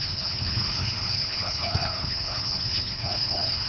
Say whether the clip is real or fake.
fake